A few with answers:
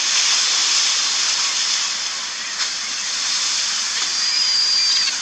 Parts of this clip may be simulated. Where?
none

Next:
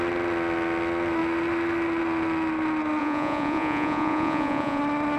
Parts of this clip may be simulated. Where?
3.0-4.8 (vocoder, Vocos)

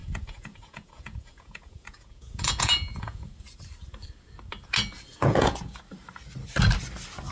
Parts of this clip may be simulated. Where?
0.0-3.2 (vocoder, Vocos); 5.1-5.8

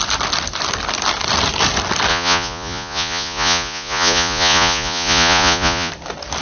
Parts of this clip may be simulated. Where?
2.1-5.9 (vocoder, Vocos)